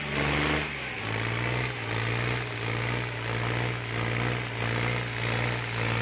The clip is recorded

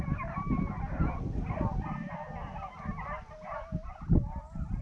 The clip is recorded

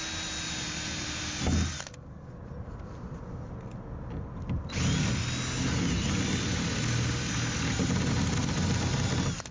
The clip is recorded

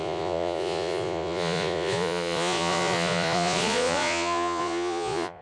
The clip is remade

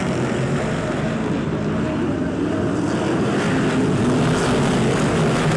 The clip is recorded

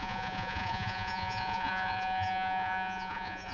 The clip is remade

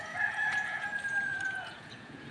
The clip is remade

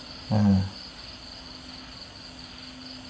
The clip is recorded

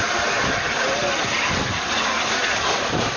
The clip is recorded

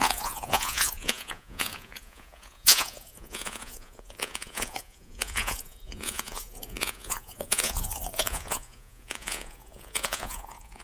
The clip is remade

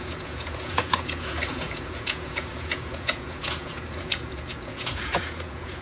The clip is remade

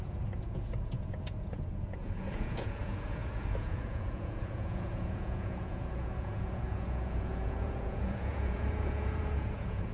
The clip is remade